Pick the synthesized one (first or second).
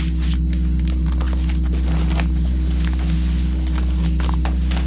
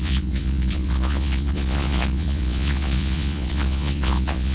second